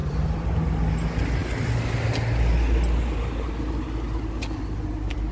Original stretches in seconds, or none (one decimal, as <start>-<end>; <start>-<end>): 0.6-5.3